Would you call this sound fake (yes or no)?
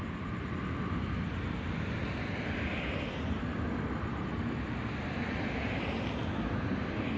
no